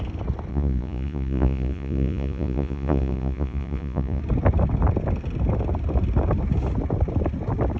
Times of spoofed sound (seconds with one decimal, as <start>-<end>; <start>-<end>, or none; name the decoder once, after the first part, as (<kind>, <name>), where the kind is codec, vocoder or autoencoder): 0.5-4.2 (vocoder, Vocos)